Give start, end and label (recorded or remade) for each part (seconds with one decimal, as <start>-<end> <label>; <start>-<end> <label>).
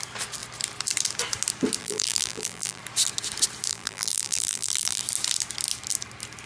0.0-1.8 recorded; 1.8-2.8 remade; 2.8-3.7 recorded; 3.7-5.0 remade; 5.0-6.5 recorded